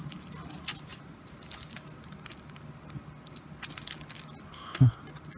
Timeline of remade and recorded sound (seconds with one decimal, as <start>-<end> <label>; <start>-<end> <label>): 0.0-4.5 recorded; 4.5-5.0 remade; 5.0-5.4 recorded